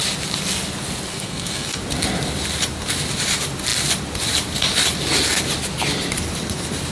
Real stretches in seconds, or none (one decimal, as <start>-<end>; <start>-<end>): 0.0-1.1; 1.8-6.9